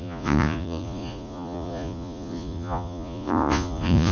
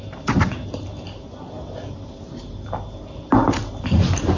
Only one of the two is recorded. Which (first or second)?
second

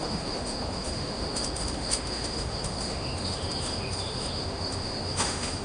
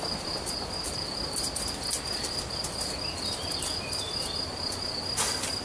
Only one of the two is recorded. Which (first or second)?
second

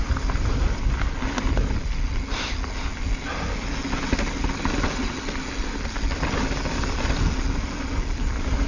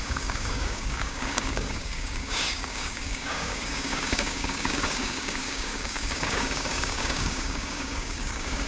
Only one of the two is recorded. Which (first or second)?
first